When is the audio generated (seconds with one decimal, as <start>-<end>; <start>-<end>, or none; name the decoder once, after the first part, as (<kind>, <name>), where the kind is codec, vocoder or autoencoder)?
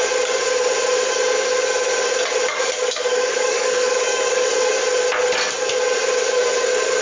2.5-4.7 (codec, DAC)